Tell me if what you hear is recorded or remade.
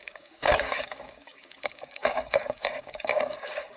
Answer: remade